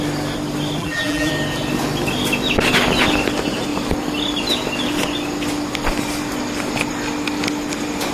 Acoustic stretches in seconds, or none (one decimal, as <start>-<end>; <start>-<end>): 0.0-0.8; 1.3-8.1